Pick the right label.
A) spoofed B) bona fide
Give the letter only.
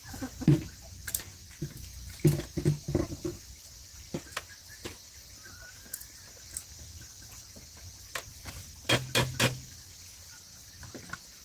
B